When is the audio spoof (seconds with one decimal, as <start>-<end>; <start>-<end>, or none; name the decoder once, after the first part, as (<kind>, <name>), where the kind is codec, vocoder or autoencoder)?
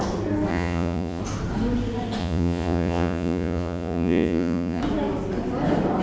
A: 0.5-1.2 (vocoder, Vocos); 2.2-4.8